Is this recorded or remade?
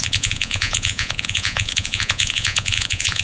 remade